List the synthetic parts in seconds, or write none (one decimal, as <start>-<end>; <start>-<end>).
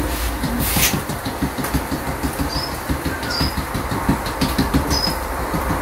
0.7-3.0